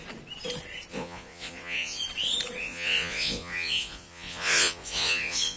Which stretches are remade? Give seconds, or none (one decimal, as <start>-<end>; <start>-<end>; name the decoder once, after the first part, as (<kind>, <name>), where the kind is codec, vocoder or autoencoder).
0.9-2.0 (vocoder, Vocos); 2.6-5.6